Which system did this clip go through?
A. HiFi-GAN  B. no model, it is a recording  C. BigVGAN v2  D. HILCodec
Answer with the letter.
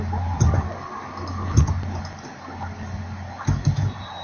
B